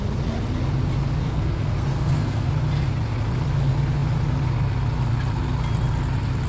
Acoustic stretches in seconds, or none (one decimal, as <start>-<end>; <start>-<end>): 0.0-1.2; 2.5-6.5